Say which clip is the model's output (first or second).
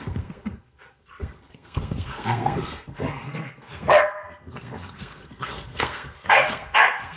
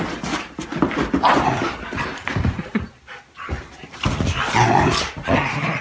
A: first